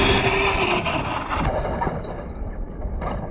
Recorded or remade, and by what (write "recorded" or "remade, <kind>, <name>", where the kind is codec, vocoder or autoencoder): recorded